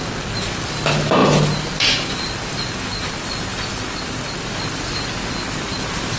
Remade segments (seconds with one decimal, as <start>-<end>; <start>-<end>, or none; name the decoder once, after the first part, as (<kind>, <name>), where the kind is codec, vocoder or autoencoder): none